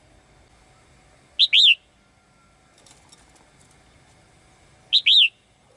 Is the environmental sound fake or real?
real